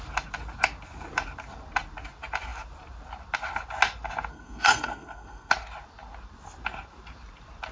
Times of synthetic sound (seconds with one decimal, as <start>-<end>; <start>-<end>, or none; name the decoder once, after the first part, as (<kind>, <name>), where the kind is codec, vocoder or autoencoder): 4.3-5.5 (codec, SNAC)